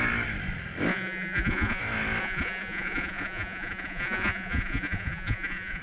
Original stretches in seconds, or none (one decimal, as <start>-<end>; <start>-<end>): 0.0-0.9; 1.8-2.2